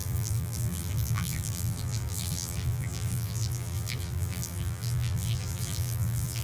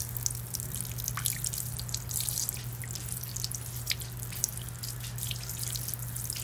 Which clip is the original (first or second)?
second